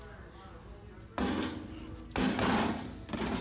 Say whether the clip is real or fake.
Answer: real